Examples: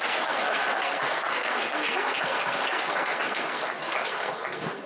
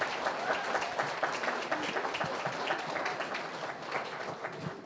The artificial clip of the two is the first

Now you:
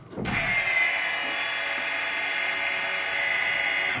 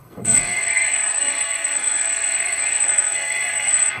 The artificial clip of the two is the second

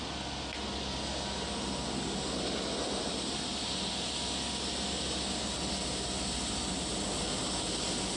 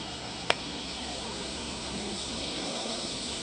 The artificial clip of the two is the second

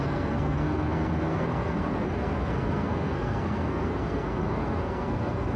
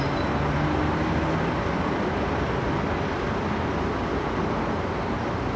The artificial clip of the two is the first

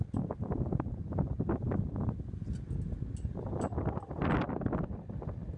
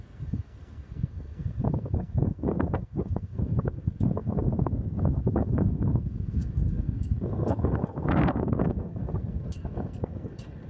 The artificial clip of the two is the second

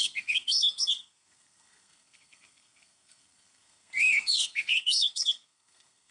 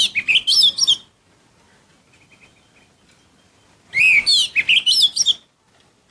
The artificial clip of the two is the first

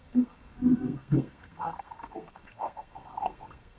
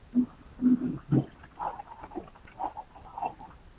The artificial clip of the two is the first